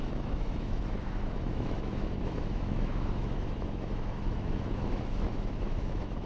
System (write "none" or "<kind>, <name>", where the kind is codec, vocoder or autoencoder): autoencoder, DAC-VAE